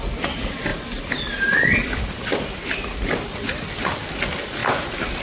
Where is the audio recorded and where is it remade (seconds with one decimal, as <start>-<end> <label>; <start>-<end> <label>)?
0.0-5.2 recorded